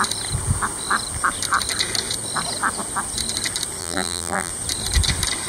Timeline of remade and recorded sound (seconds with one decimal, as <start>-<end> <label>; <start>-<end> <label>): 0.0-3.8 recorded; 3.8-4.5 remade; 4.5-5.5 recorded